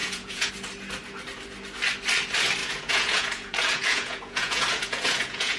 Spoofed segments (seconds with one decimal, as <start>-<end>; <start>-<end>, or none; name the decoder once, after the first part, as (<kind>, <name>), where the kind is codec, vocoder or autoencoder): 0.0-0.5 (vocoder, Vocos); 2.6-5.6